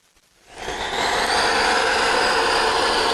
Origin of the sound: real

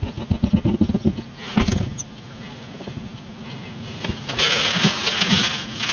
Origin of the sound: real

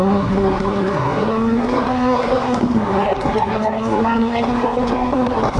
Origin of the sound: fake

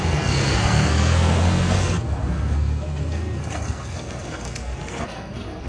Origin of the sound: fake